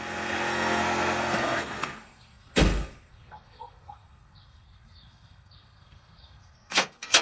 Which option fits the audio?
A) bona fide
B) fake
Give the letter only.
B